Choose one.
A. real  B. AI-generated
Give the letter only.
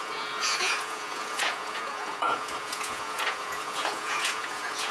B